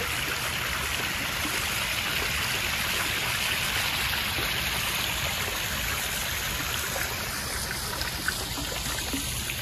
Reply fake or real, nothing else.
real